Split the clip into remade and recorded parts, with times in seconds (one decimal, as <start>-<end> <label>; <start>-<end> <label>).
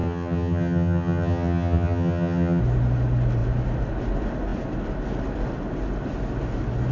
0.0-2.6 remade; 2.6-6.9 recorded